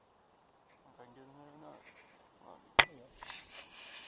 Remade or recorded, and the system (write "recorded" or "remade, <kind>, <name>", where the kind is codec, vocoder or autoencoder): recorded